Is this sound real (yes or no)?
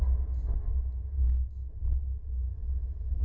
yes